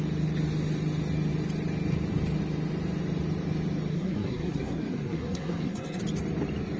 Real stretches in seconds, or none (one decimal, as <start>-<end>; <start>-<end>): 0.0-3.9; 6.0-6.8